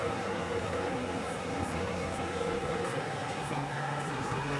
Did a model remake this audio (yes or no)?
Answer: yes